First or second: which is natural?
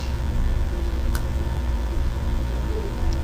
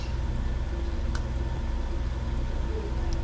second